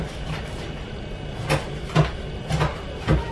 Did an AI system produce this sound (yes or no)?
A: no